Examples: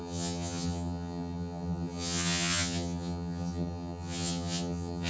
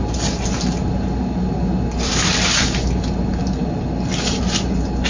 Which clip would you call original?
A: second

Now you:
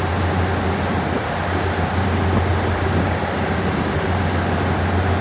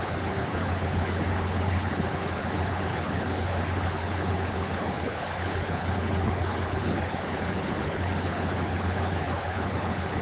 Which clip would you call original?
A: first